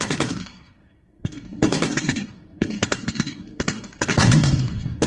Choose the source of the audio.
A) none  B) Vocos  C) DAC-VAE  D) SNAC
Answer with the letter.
D